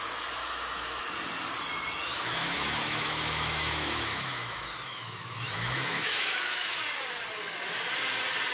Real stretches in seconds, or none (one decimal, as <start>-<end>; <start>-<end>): 0.0-0.4; 1.0-2.1; 6.8-8.5